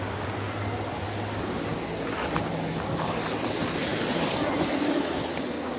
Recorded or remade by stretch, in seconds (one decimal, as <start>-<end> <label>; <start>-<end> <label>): 0.0-3.9 recorded; 3.9-4.7 remade; 4.7-5.8 recorded